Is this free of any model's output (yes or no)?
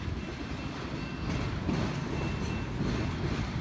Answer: yes